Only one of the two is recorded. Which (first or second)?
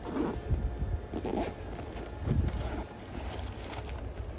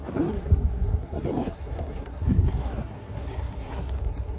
first